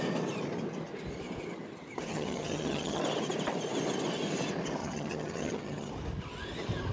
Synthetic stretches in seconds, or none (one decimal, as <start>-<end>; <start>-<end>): 2.1-3.0; 4.8-5.9